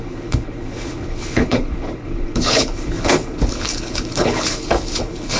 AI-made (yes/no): yes